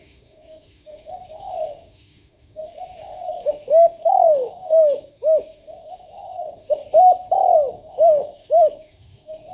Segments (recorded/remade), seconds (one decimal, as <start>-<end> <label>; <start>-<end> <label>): 0.0-6.8 remade; 6.8-7.7 recorded; 7.7-9.5 remade